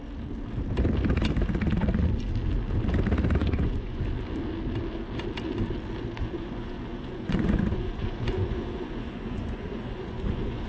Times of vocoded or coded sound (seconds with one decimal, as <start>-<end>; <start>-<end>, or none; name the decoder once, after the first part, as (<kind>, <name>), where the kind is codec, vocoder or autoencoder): 3.4-4.0 (vocoder, Vocos); 6.2-10.7